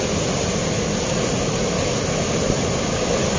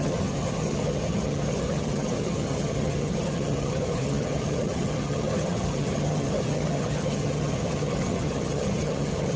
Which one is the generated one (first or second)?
second